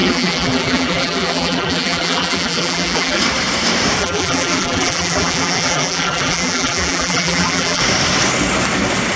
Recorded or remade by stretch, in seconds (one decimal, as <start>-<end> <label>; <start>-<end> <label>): 0.0-3.2 remade; 3.2-4.0 recorded; 4.0-7.8 remade; 7.8-9.2 recorded